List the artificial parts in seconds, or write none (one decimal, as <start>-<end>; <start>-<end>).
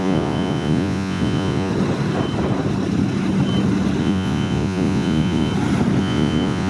0.0-1.7; 4.0-5.5; 6.0-6.7